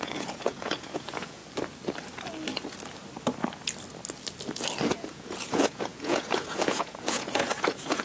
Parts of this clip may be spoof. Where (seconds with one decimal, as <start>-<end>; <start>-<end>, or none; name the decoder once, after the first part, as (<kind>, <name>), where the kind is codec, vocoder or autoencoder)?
0.0-1.4 (vocoder, Vocos); 4.9-8.0